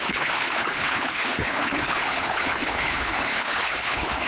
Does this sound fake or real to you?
fake